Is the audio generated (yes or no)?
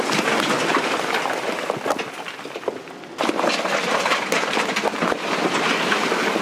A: no